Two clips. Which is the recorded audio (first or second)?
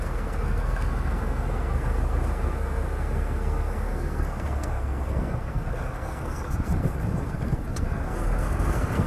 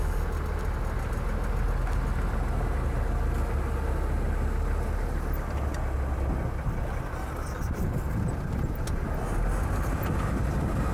second